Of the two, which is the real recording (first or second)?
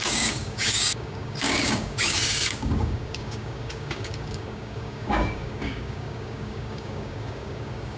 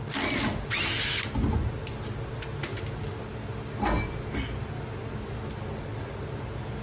second